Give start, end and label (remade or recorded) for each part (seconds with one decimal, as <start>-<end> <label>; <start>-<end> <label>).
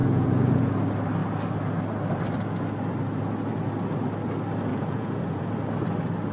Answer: 0.0-0.7 remade; 0.7-4.7 recorded; 4.7-5.4 remade; 5.4-6.3 recorded